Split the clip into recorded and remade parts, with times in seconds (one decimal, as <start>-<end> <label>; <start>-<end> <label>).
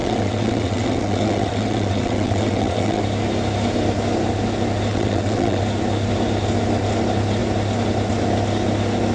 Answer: 0.0-3.0 remade; 3.0-4.9 recorded; 4.9-5.6 remade; 5.6-9.1 recorded